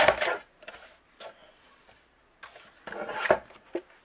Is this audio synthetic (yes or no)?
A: no